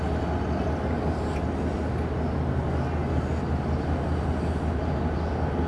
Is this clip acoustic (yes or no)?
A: yes